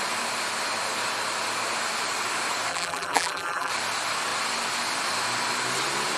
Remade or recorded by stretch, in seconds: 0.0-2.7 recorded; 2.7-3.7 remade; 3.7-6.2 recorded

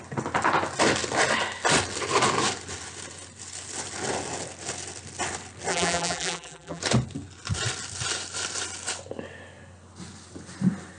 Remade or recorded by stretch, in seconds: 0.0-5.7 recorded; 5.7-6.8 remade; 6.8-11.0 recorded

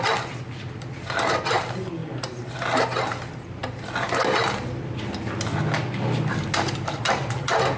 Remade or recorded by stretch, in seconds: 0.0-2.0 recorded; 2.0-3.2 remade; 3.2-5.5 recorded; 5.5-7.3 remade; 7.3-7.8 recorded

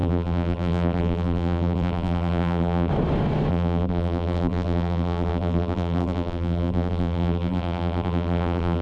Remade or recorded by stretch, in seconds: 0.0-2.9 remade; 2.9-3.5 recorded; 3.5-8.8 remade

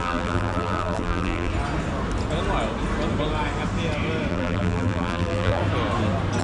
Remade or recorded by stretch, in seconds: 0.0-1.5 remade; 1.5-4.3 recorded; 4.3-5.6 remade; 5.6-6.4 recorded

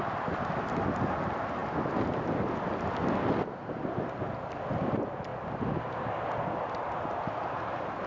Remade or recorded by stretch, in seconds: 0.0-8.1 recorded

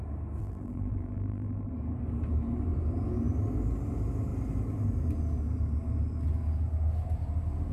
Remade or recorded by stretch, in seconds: 0.0-0.4 recorded; 0.4-1.7 remade; 1.7-7.7 recorded